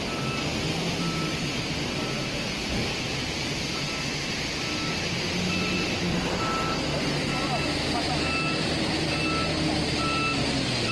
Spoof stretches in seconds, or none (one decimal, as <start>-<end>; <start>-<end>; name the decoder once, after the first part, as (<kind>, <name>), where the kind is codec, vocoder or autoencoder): none